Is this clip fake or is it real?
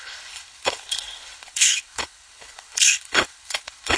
fake